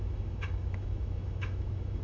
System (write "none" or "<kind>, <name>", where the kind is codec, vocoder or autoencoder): autoencoder, DAC-VAE